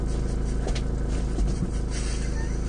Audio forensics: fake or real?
real